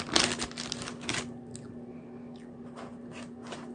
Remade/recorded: recorded